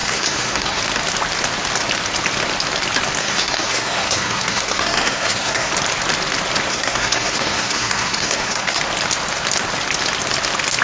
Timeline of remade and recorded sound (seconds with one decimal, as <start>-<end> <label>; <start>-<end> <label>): 0.0-0.8 remade; 0.8-3.2 recorded; 3.2-5.7 remade; 5.7-6.7 recorded; 6.7-8.8 remade; 8.8-10.8 recorded